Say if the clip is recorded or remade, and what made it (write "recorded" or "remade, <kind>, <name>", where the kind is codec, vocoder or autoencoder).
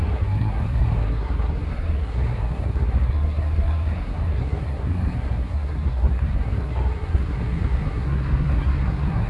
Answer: remade, codec, SNAC